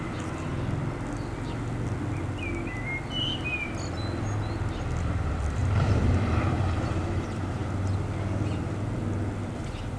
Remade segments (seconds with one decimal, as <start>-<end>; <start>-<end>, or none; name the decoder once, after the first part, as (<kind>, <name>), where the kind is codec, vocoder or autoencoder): 0.0-0.5 (vocoder, BigVGAN v2); 5.0-7.6; 9.5-10.0